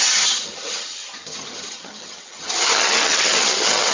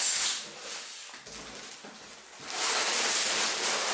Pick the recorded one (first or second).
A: second